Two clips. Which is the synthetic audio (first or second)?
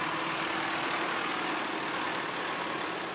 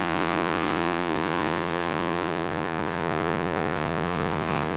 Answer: second